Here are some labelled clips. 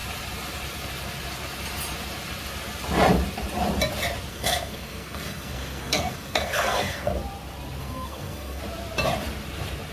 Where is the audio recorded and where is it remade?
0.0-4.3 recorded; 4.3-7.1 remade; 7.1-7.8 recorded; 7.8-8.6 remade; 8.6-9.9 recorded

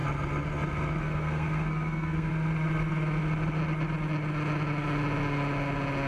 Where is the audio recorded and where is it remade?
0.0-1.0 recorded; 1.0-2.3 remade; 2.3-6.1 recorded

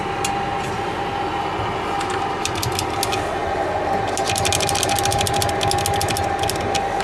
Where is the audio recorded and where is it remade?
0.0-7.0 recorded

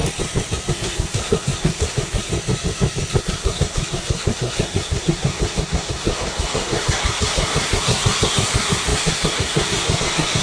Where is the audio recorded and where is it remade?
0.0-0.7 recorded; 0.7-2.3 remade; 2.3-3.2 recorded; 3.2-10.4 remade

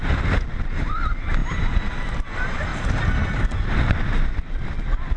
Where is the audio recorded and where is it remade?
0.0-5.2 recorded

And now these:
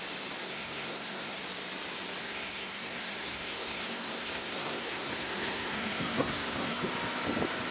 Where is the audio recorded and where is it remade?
0.0-0.4 recorded; 0.4-1.4 remade; 1.4-2.2 recorded; 2.2-6.8 remade; 6.8-7.7 recorded